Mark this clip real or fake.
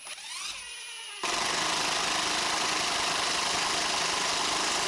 real